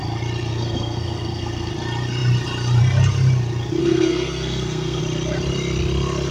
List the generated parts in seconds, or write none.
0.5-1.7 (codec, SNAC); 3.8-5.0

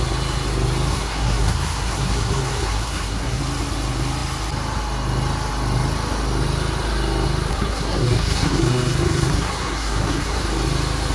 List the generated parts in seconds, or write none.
0.9-3.4 (codec, SNAC); 7.5-10.4